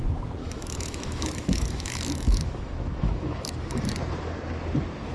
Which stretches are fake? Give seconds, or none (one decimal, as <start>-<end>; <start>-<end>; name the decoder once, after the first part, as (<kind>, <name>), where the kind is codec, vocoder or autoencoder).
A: 0.4-3.5 (autoencoder, DAC-VAE)